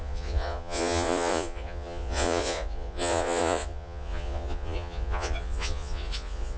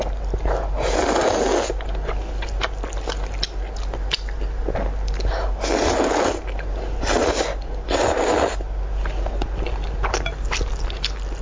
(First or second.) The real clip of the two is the second